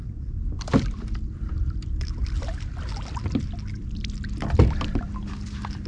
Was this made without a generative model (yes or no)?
no